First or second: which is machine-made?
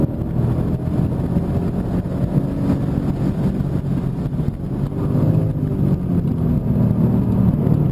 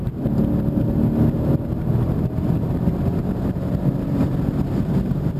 second